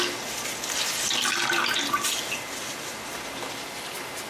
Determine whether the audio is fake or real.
real